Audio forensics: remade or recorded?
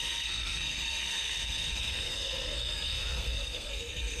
remade